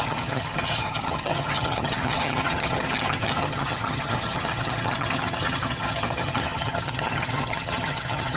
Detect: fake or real fake